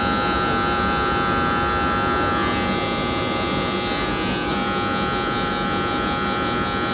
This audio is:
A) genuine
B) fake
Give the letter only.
B